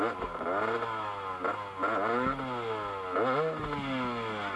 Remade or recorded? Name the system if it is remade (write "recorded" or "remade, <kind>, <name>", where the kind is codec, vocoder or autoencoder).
recorded